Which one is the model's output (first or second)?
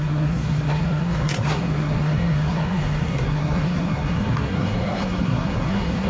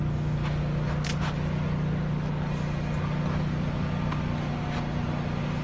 first